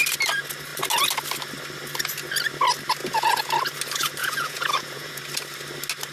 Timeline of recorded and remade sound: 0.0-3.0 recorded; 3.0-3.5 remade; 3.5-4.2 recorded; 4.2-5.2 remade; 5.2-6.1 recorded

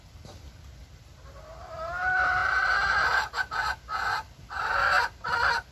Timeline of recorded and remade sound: 0.0-1.1 remade; 1.1-2.0 recorded; 2.0-2.4 remade; 2.4-3.2 recorded; 3.2-5.7 remade

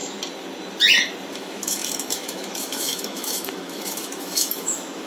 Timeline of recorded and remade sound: 0.0-1.3 recorded; 1.3-5.1 remade

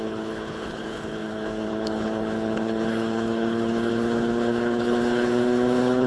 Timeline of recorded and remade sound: 0.0-6.1 remade

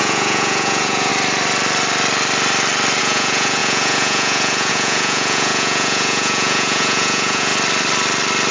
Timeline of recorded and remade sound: 0.0-1.1 remade; 1.1-3.0 recorded; 3.0-7.5 remade; 7.5-8.5 recorded

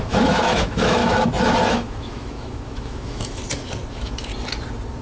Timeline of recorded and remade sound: 0.0-1.0 remade; 1.0-1.7 recorded; 1.7-3.4 remade; 3.4-3.9 recorded; 3.9-4.3 remade; 4.3-5.0 recorded

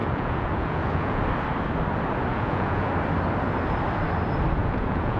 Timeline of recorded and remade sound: 0.0-1.2 remade; 1.2-2.3 recorded; 2.3-2.9 remade; 2.9-4.6 recorded; 4.6-5.2 remade

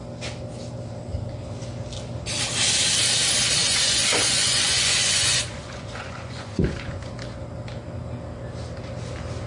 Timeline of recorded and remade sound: 0.0-3.6 recorded; 3.6-7.1 remade; 7.1-9.5 recorded